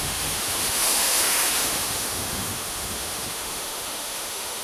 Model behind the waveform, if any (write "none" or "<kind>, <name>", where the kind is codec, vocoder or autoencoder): autoencoder, DAC-VAE